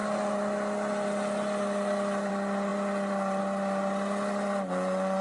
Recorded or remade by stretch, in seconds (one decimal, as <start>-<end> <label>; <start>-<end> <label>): 0.0-5.2 recorded